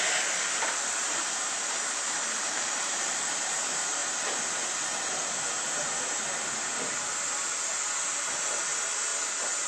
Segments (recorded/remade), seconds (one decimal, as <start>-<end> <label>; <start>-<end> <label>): 0.0-4.0 remade; 4.0-8.2 recorded; 8.2-9.1 remade; 9.1-9.7 recorded